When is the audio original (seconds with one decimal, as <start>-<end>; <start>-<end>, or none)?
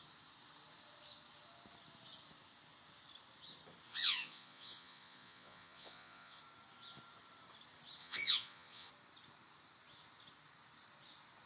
0.0-3.9; 6.4-8.0; 8.9-11.5